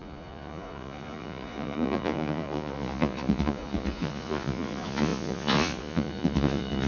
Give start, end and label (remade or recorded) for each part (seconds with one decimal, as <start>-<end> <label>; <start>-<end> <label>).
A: 0.0-6.9 remade